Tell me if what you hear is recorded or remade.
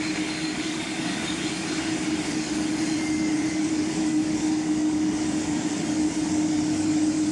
remade